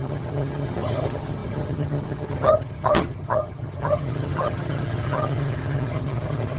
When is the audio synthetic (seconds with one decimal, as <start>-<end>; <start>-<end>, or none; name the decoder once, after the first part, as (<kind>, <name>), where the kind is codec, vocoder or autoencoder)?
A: 0.0-6.6 (vocoder, HiFi-GAN)